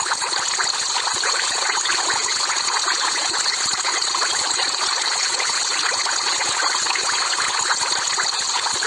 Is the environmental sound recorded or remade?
remade